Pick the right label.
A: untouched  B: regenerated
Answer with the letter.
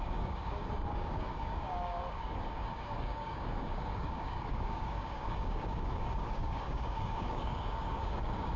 B